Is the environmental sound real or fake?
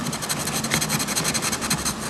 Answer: real